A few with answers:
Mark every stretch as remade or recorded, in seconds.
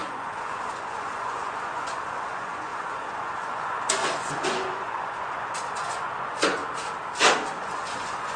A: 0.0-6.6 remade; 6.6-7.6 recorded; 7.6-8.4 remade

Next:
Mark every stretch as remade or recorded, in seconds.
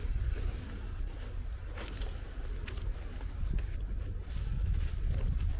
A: 0.0-5.6 recorded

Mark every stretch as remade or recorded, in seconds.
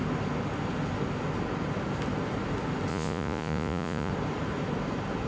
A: 0.0-2.9 recorded; 2.9-4.1 remade; 4.1-5.3 recorded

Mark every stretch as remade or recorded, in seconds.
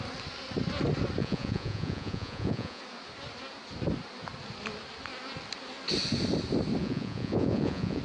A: 0.0-1.2 recorded; 1.2-2.8 remade; 2.8-6.8 recorded; 6.8-8.0 remade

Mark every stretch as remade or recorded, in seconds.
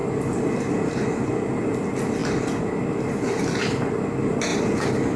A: 0.0-5.2 recorded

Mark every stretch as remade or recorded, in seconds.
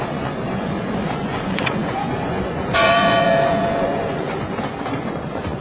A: 0.0-5.6 remade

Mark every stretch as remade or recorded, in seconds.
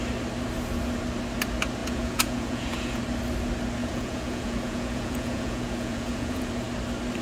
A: 0.0-1.8 recorded; 1.8-3.0 remade; 3.0-3.8 recorded; 3.8-6.5 remade; 6.5-7.2 recorded